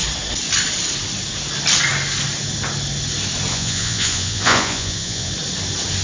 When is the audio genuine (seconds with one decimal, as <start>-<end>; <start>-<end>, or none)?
0.0-3.5; 5.3-6.0